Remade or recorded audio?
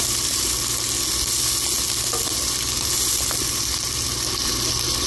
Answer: recorded